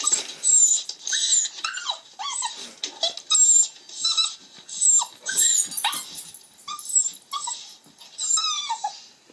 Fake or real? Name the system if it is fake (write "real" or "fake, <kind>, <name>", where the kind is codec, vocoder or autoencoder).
real